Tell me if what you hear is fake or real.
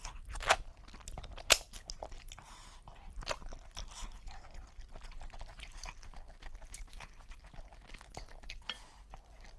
real